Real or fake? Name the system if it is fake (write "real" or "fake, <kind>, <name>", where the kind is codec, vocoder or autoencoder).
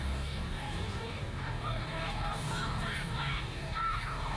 fake, codec, DAC